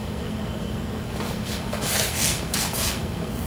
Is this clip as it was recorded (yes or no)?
no